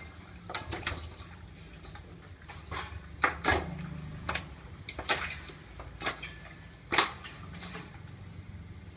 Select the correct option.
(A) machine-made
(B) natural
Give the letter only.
B